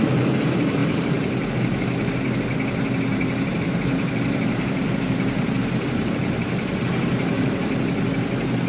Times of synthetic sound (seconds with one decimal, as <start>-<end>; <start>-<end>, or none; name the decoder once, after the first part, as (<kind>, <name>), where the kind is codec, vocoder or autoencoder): 0.8-1.5 (vocoder, BigVGAN v2); 3.1-7.8

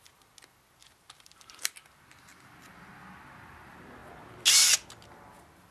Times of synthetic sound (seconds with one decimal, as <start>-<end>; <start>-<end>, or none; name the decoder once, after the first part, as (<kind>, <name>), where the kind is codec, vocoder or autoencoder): 0.8-1.7 (vocoder, BigVGAN v2)

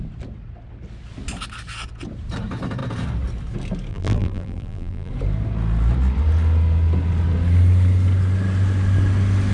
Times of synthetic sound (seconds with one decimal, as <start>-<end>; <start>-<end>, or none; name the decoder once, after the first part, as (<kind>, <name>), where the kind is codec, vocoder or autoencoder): 3.9-5.1 (vocoder, BigVGAN v2)

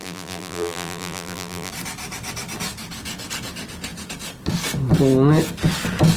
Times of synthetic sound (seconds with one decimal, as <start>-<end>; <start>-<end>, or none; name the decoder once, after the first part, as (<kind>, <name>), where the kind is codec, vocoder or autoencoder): 0.0-1.7 (vocoder, BigVGAN v2)

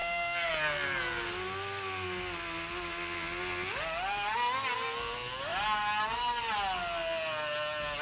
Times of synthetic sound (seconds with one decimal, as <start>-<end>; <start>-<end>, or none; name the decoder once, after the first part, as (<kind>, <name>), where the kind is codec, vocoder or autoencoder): 0.0-0.5 (vocoder, BigVGAN v2)